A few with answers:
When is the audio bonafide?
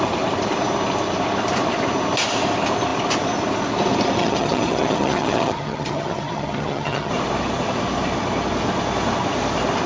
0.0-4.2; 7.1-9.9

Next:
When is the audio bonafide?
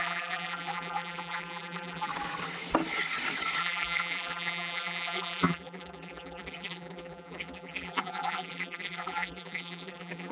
2.1-3.6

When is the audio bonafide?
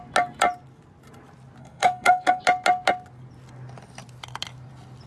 0.0-1.6; 2.4-5.1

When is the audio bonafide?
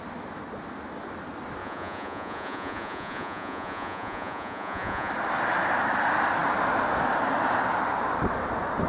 0.0-1.6; 5.1-8.9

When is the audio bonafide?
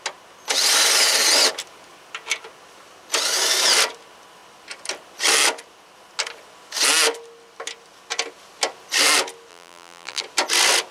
0.0-9.5; 10.2-10.9